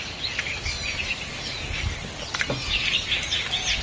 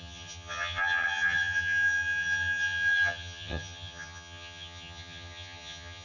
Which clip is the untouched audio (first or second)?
first